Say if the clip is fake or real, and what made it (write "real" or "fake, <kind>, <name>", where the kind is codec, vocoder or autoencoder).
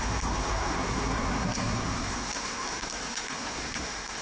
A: fake, codec, SNAC